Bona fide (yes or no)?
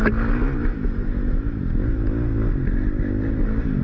yes